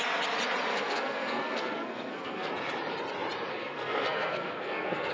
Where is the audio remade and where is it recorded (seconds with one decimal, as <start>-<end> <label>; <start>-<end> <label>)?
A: 0.0-0.7 recorded; 0.7-2.5 remade; 2.5-3.5 recorded; 3.5-5.1 remade